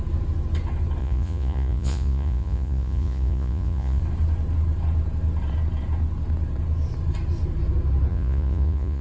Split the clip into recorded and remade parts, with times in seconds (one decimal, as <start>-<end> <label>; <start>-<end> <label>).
0.0-1.0 recorded; 1.0-4.0 remade; 4.0-8.1 recorded; 8.1-9.0 remade